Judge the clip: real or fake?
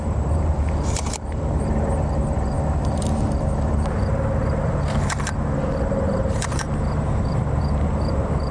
fake